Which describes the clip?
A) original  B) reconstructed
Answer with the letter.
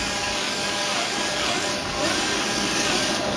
B